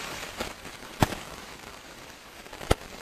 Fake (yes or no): yes